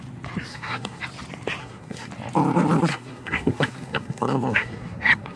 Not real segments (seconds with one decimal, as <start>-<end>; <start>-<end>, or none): 0.5-1.0; 1.6-2.1; 2.9-5.4